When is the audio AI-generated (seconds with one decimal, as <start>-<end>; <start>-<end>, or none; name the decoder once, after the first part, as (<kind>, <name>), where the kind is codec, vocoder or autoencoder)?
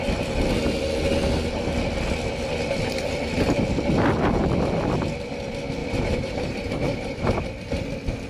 5.8-7.3 (vocoder, BigVGAN v2)